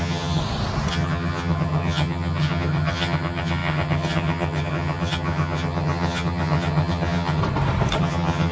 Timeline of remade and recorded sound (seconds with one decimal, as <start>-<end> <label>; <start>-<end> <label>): 0.0-0.4 remade; 0.4-0.9 recorded; 0.9-7.4 remade; 7.4-8.0 recorded; 8.0-8.5 remade